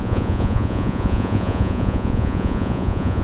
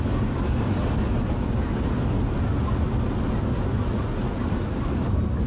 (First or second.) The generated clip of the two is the first